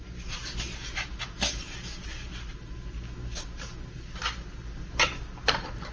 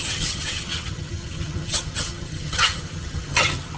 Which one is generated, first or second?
second